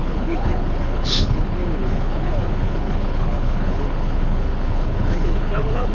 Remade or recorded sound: remade